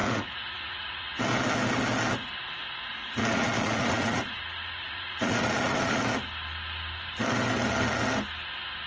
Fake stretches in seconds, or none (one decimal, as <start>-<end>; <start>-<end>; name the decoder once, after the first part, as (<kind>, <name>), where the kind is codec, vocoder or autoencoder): 0.0-1.2 (vocoder, Vocos); 3.2-6.0